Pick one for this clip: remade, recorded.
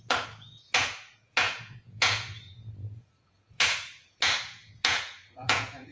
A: remade